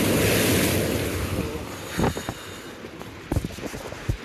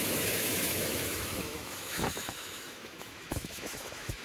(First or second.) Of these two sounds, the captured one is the first